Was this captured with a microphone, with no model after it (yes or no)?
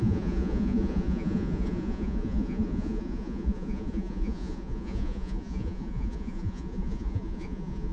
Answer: no